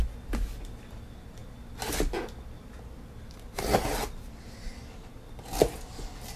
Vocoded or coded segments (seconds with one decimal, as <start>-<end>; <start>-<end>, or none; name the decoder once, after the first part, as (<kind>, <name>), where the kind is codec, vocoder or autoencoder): none